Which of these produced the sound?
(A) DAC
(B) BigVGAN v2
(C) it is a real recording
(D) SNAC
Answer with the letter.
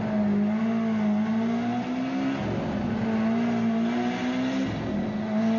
C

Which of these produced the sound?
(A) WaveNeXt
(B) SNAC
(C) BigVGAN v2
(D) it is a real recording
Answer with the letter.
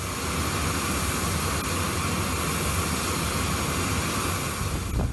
D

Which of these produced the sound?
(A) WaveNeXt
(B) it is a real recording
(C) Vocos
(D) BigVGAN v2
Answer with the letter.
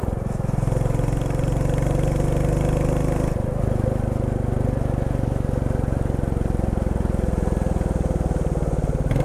B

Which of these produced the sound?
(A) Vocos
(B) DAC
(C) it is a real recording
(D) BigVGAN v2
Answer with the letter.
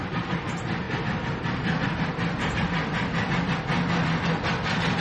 C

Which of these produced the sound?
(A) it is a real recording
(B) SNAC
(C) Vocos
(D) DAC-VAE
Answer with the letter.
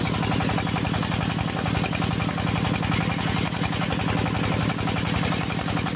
A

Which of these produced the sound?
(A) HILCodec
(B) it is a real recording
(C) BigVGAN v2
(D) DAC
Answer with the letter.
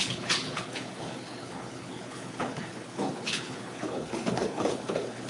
A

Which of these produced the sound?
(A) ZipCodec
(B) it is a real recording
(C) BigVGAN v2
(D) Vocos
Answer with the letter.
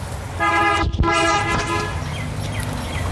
B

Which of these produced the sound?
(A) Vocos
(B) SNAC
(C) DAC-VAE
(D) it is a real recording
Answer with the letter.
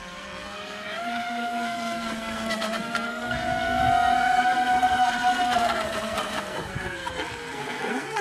B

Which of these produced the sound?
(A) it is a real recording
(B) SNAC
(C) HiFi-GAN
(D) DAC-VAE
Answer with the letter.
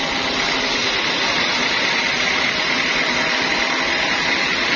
A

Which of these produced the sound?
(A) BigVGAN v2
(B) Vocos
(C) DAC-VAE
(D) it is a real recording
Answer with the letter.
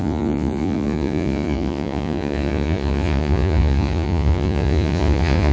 B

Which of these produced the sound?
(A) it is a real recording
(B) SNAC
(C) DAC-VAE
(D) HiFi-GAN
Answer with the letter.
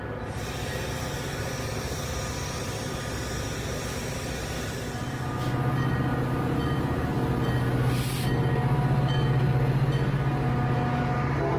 A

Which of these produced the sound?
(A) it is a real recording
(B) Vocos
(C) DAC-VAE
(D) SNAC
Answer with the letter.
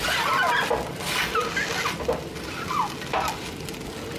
A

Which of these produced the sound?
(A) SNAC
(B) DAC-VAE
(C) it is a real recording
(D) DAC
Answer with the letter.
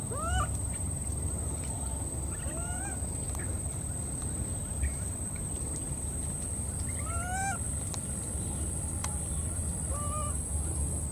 C